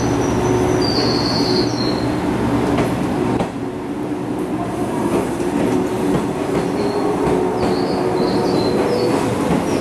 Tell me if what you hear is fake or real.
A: real